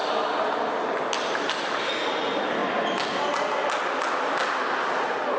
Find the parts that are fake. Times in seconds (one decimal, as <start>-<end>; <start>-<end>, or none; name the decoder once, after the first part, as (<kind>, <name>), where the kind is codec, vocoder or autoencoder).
none